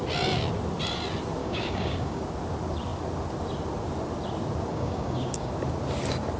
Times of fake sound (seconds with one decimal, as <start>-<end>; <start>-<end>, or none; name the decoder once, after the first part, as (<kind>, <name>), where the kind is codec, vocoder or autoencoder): 1.4-2.2 (codec, DAC); 4.7-5.5

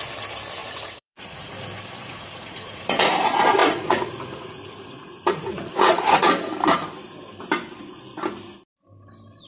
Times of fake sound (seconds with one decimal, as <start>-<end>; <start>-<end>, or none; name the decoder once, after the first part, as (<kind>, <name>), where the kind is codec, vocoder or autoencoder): 0.6-1.5 (vocoder, Vocos); 2.0-3.1; 3.6-6.3

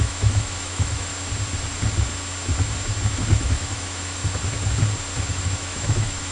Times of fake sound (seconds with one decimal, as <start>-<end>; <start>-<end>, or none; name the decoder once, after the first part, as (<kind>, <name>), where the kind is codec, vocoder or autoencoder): 0.0-1.1 (autoencoder, DAC-VAE); 3.4-4.2; 5.2-6.3

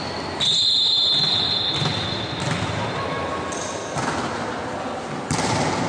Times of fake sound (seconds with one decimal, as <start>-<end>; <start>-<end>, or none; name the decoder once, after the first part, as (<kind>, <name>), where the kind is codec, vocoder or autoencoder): none